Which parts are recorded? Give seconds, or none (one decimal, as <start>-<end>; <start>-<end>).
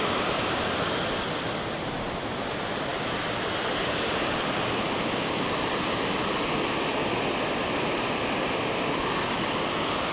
0.0-10.1